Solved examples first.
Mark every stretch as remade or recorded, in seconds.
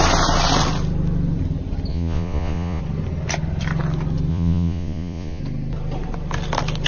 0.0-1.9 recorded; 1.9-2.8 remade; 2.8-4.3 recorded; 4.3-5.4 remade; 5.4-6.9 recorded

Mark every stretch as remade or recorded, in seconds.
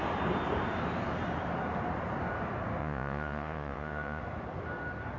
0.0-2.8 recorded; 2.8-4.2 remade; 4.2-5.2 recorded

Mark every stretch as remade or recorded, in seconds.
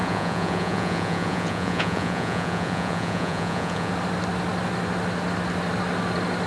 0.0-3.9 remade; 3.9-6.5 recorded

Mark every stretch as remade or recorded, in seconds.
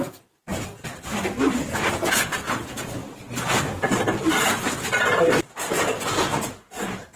0.0-0.5 remade; 0.5-1.9 recorded; 1.9-3.0 remade; 3.0-5.6 recorded; 5.6-7.2 remade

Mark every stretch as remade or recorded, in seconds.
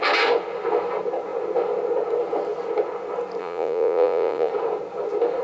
0.0-3.4 recorded; 3.4-4.5 remade; 4.5-5.4 recorded